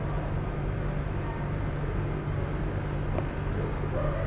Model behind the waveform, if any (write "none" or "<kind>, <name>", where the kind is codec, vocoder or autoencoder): none